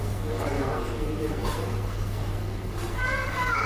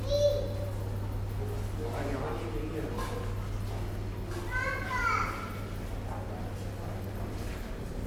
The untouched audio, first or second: second